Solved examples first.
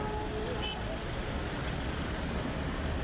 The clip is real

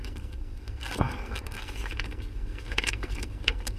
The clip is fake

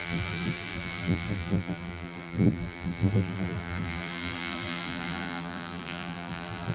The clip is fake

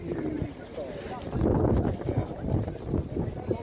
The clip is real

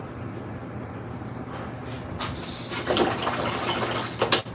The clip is real